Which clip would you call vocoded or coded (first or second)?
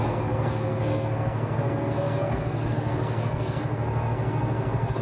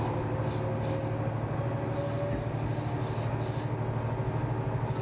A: first